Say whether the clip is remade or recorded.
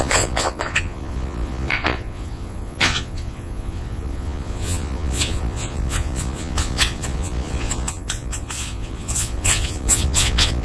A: remade